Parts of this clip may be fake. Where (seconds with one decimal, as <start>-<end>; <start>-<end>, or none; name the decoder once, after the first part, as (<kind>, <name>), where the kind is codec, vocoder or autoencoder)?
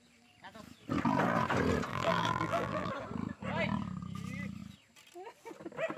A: 1.9-2.9 (vocoder, BigVGAN v2)